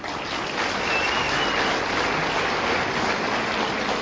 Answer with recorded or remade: recorded